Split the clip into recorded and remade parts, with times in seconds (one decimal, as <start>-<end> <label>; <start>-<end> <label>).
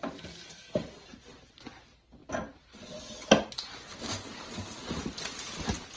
0.0-6.0 recorded